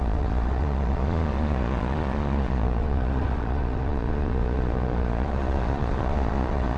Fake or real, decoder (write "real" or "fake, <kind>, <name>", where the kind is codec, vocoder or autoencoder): fake, vocoder, Vocos